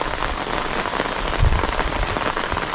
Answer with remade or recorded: recorded